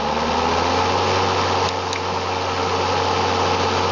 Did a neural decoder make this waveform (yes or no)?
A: no